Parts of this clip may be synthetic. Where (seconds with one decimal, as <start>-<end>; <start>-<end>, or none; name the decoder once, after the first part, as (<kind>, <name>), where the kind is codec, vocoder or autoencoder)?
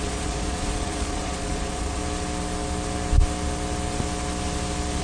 0.0-2.0 (vocoder, Vocos)